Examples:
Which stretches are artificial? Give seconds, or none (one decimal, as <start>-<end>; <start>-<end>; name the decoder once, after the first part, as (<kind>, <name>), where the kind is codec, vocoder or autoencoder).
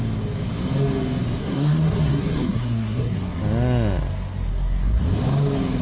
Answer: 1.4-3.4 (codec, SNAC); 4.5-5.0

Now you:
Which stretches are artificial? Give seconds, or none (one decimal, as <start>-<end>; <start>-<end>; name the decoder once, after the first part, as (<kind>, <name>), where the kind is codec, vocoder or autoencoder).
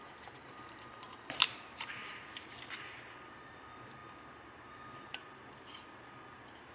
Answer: 0.0-6.7 (vocoder, BigVGAN v2)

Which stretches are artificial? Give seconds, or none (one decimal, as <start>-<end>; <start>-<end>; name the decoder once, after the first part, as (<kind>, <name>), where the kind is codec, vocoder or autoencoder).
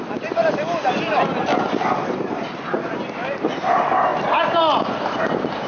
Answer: none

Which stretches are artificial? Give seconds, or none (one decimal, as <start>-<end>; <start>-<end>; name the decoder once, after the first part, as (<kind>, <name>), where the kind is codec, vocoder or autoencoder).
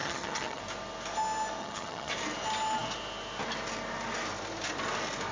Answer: 0.0-0.6 (vocoder, HiFi-GAN); 1.6-2.1